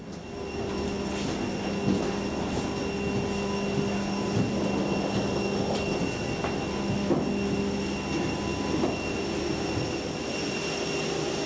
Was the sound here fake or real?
real